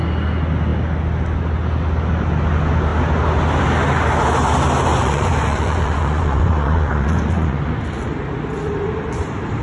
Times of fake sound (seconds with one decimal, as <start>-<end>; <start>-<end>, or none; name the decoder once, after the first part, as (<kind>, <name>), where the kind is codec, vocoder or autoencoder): 4.9-7.7 (vocoder, Vocos)